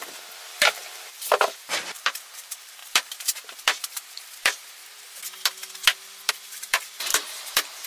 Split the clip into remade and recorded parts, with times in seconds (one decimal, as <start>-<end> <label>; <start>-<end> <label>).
0.0-4.8 remade; 4.8-6.3 recorded; 6.3-7.9 remade